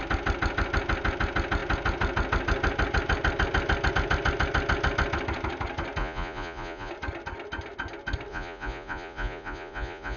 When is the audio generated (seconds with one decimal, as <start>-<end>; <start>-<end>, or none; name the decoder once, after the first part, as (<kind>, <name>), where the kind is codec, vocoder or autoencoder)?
6.0-6.9 (vocoder, Vocos); 8.3-10.2